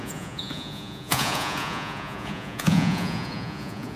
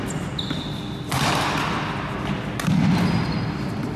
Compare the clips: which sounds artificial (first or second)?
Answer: first